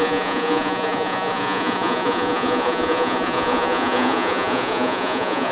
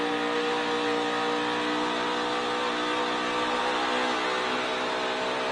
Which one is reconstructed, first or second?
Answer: first